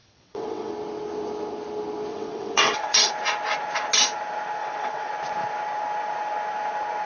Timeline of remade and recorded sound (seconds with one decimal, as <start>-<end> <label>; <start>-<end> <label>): 0.0-0.7 remade; 0.7-2.1 recorded; 2.1-3.1 remade; 3.1-4.6 recorded; 4.6-5.1 remade; 5.1-7.1 recorded